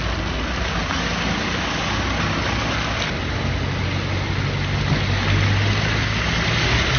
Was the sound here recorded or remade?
recorded